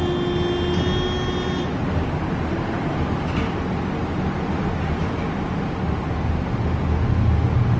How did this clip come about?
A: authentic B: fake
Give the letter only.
A